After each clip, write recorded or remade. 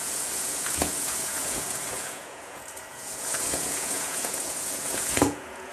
remade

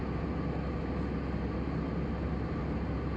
recorded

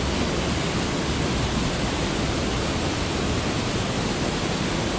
recorded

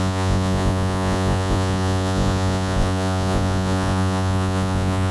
remade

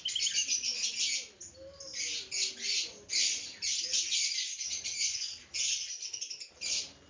recorded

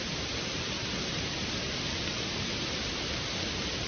recorded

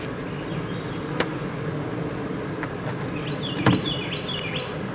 recorded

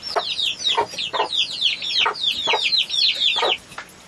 recorded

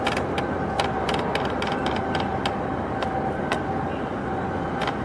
recorded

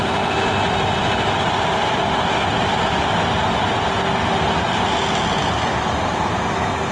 recorded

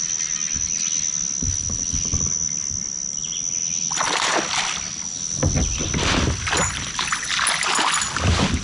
recorded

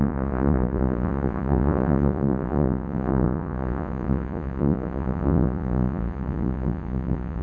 remade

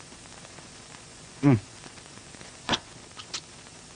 remade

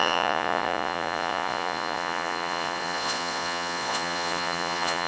remade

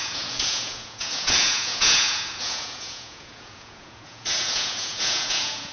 remade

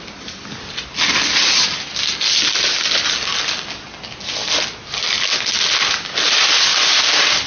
recorded